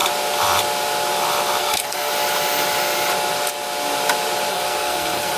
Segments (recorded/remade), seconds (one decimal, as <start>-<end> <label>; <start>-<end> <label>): 0.0-1.6 recorded; 1.6-2.1 remade; 2.1-4.5 recorded; 4.5-5.4 remade